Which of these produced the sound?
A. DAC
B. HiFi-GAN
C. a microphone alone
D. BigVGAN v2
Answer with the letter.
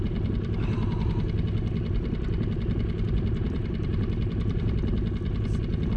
C